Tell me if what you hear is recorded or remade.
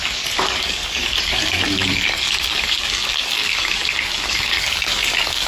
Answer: remade